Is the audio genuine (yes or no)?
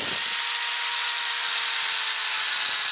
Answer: yes